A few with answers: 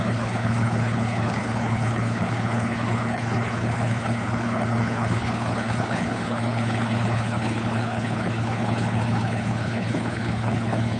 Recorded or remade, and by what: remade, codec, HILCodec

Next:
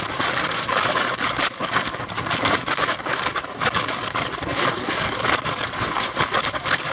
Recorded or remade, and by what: remade, codec, DAC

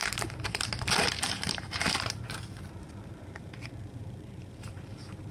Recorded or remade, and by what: remade, vocoder, BigVGAN v2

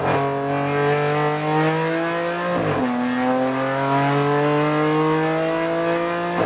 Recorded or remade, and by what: recorded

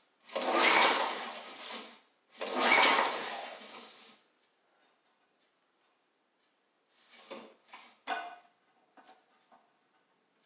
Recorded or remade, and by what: recorded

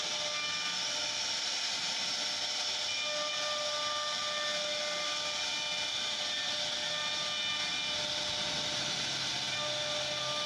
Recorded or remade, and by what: recorded